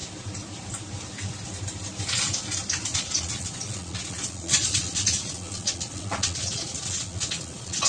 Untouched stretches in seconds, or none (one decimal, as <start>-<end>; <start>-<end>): 0.0-2.9